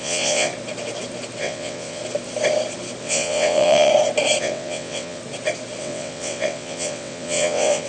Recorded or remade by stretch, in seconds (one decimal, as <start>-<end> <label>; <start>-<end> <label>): 0.0-0.5 remade; 0.5-1.4 recorded; 1.4-2.0 remade; 2.0-3.0 recorded; 3.0-3.9 remade; 3.9-4.4 recorded; 4.4-5.2 remade; 5.2-5.8 recorded; 5.8-7.9 remade